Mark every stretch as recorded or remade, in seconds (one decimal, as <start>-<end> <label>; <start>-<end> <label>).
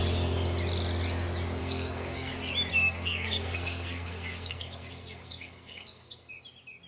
0.0-1.6 recorded; 1.6-2.3 remade; 2.3-2.7 recorded; 2.7-6.3 remade; 6.3-6.9 recorded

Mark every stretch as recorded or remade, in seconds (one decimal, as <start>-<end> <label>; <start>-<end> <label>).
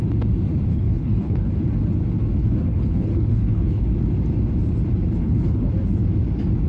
0.0-0.7 recorded; 0.7-1.5 remade; 1.5-2.4 recorded; 2.4-3.8 remade; 3.8-5.2 recorded; 5.2-5.7 remade; 5.7-6.7 recorded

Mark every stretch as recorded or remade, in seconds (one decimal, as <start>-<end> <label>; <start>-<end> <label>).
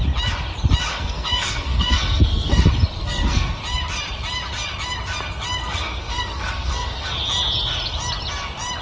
0.0-0.9 recorded; 0.9-2.6 remade; 2.6-3.0 recorded; 3.0-3.6 remade; 3.6-5.6 recorded; 5.6-7.1 remade; 7.1-8.8 recorded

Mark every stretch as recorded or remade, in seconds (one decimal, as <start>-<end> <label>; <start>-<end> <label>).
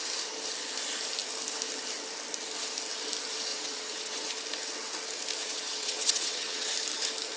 0.0-3.5 recorded; 3.5-4.3 remade; 4.3-5.4 recorded; 5.4-6.7 remade; 6.7-7.4 recorded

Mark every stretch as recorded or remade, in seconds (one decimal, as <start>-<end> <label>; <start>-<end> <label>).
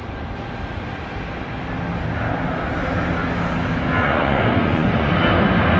0.0-4.0 recorded; 4.0-5.1 remade; 5.1-5.8 recorded